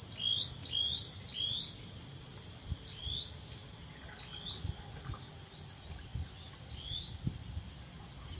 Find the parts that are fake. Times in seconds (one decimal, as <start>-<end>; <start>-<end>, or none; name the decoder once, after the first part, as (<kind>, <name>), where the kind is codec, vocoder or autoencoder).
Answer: 1.1-3.6 (vocoder, BigVGAN v2); 5.5-6.1; 6.7-8.4